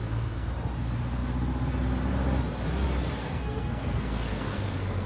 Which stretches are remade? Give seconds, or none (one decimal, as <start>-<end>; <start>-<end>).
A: 0.0-0.5; 3.2-5.1